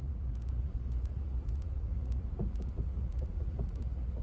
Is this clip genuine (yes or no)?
no